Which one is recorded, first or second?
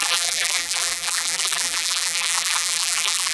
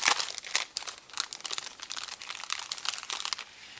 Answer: second